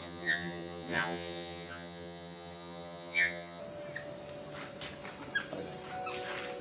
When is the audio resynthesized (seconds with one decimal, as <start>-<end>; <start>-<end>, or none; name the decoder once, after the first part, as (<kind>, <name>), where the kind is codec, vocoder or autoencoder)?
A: 0.0-3.6 (vocoder, HiFi-GAN)